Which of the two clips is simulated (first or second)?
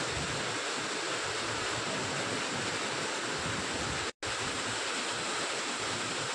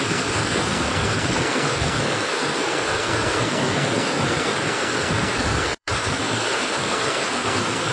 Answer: second